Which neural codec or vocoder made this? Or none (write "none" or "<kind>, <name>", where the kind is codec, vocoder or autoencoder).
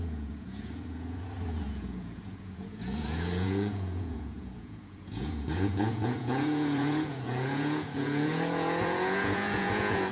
vocoder, Vocos